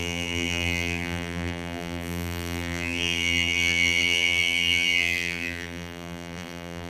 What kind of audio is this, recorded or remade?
remade